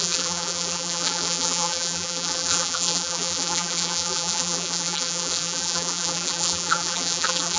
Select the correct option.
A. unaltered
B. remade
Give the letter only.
B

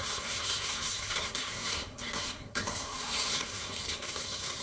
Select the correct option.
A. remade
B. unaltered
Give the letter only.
A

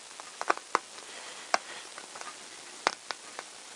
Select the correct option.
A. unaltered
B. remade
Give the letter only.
A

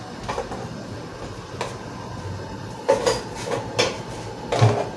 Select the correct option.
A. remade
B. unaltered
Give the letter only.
B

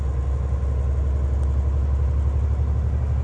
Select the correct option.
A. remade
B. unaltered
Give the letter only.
B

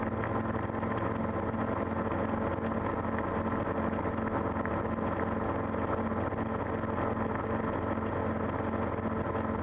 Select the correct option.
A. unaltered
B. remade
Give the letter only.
A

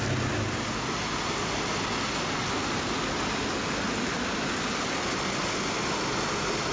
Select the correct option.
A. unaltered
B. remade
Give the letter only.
A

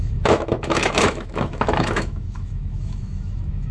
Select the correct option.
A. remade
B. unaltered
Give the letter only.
A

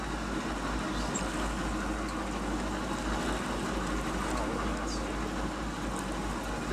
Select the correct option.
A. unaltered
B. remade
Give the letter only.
A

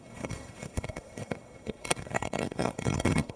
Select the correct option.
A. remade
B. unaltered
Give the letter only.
A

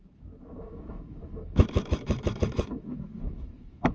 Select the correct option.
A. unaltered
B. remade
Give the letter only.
B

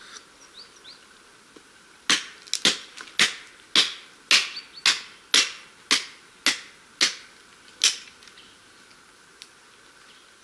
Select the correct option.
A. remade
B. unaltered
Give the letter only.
B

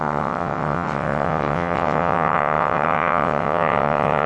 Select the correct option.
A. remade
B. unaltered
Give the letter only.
A